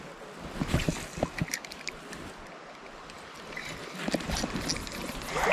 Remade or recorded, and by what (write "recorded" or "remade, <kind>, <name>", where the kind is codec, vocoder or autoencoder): recorded